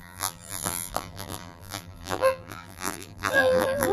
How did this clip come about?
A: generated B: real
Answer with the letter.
A